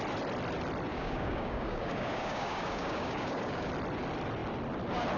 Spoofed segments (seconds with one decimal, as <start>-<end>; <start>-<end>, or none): 0.9-3.7